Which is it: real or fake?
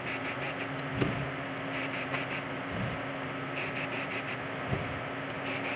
real